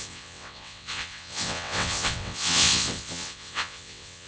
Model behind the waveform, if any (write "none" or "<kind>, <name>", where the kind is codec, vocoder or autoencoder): vocoder, WaveNeXt